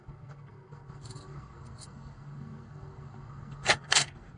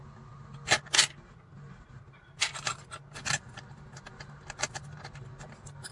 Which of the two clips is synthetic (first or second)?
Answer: first